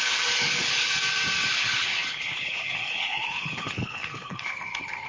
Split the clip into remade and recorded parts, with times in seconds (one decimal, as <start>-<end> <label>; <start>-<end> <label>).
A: 0.0-0.9 remade; 0.9-1.5 recorded; 1.5-5.1 remade